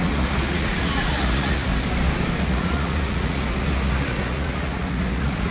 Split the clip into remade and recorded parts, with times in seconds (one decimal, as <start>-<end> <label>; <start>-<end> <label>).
0.0-1.7 remade; 1.7-2.4 recorded; 2.4-5.5 remade